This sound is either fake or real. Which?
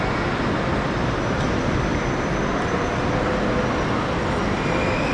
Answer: real